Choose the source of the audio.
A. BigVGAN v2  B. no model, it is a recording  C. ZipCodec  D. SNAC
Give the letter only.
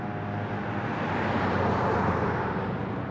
B